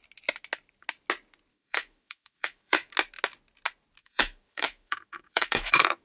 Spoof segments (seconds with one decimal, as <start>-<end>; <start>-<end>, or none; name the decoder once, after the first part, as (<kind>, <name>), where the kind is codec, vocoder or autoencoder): 1.5-2.9 (autoencoder, DAC-VAE); 4.0-6.0